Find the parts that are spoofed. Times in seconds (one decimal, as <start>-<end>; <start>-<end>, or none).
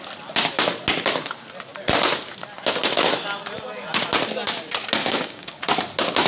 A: 5.0-5.6